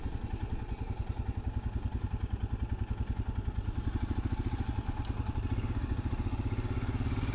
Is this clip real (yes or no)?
yes